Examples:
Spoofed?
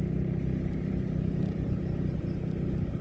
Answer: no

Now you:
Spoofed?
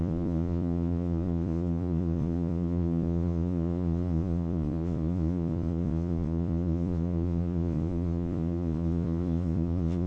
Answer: yes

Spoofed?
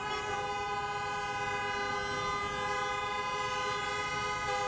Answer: no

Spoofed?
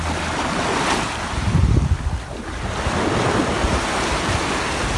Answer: no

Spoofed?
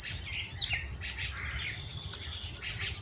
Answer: no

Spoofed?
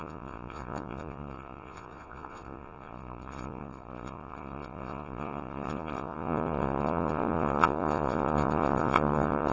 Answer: yes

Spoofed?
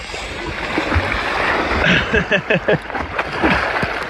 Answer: no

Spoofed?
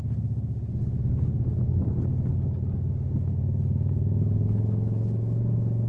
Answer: no